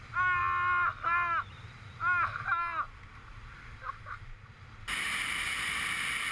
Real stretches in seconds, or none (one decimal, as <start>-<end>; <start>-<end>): 0.0-6.3